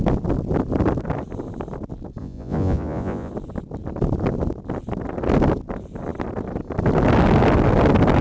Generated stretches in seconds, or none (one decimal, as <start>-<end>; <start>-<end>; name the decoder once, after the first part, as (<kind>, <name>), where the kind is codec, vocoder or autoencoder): 2.2-3.3 (vocoder, Vocos)